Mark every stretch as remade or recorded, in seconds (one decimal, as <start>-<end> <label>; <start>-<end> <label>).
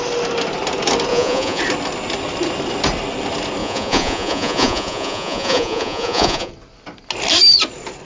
0.0-1.1 recorded; 1.1-1.6 remade; 1.6-3.6 recorded; 3.6-6.5 remade; 6.5-8.0 recorded